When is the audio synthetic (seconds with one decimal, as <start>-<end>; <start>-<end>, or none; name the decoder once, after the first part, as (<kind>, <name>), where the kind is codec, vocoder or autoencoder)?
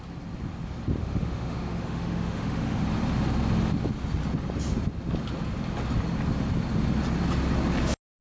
1.0-2.8 (autoencoder, DAC-VAE)